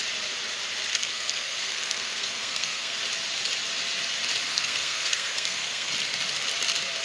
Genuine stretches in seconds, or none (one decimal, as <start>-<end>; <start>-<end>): 0.0-0.9; 3.0-4.5; 5.9-7.0